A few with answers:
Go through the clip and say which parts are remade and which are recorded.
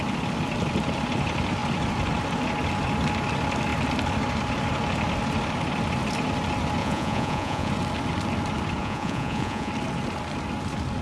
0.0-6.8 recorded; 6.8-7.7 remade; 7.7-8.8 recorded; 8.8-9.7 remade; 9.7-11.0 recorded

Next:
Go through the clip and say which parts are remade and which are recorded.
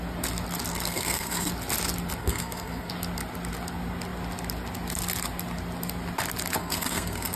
0.0-0.7 recorded; 0.7-1.5 remade; 1.5-2.2 recorded; 2.2-2.9 remade; 2.9-6.6 recorded; 6.6-7.4 remade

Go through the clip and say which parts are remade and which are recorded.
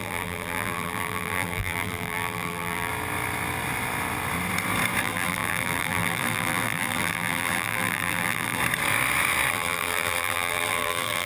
0.0-2.9 remade; 2.9-5.0 recorded; 5.0-8.6 remade; 8.6-9.5 recorded; 9.5-11.3 remade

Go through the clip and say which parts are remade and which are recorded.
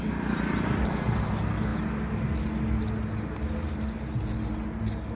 0.0-5.2 recorded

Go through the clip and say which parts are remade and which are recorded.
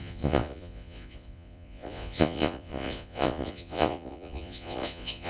0.0-5.3 remade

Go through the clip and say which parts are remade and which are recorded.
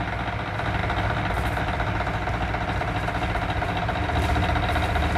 0.0-5.2 recorded